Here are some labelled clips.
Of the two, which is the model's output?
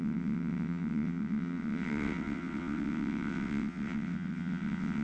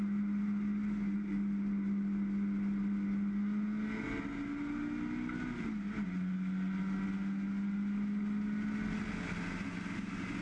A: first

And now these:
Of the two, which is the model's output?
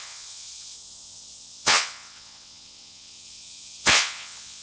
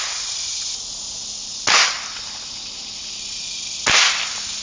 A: first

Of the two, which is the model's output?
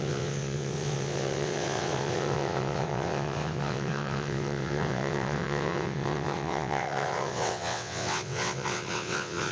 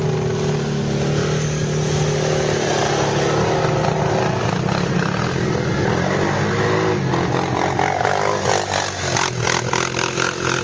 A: first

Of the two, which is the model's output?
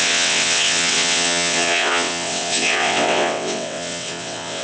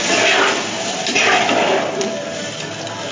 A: first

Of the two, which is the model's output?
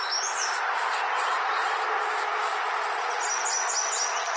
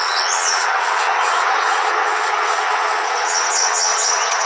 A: second